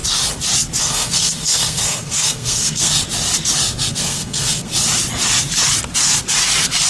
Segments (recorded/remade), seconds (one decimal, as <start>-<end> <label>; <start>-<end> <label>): 0.0-0.8 recorded; 0.8-2.9 remade; 2.9-3.9 recorded; 3.9-4.7 remade; 4.7-6.9 recorded